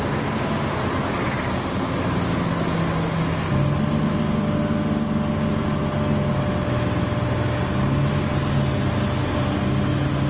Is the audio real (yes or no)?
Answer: yes